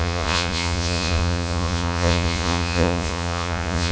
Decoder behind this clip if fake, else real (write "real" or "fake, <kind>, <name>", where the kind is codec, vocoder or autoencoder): fake, vocoder, Vocos